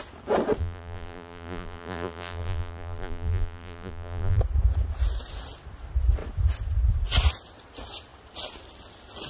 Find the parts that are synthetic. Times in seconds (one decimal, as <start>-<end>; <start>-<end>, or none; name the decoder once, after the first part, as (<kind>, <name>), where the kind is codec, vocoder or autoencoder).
0.6-4.4 (vocoder, BigVGAN v2)